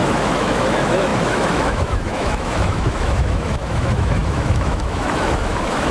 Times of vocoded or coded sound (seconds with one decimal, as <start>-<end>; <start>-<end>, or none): 0.0-5.9